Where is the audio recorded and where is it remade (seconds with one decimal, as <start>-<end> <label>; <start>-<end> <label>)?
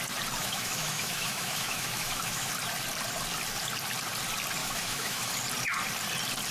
0.0-0.4 recorded; 0.4-2.5 remade; 2.5-4.6 recorded; 4.6-5.3 remade; 5.3-6.5 recorded